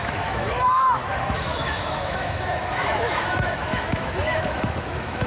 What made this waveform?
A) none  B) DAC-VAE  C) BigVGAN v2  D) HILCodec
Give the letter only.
B